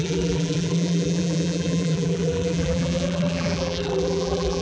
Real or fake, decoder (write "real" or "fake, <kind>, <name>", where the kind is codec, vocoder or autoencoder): fake, vocoder, BigVGAN v2